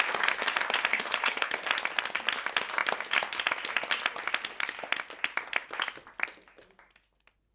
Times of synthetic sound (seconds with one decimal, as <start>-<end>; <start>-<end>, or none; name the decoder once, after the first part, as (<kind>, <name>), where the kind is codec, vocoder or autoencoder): 0.9-1.5 (codec, HILCodec)